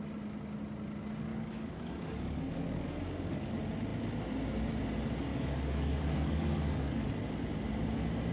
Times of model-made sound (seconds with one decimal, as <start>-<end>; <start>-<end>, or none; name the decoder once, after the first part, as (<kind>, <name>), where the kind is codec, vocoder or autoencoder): 1.3-3.5 (codec, DAC); 5.3-7.1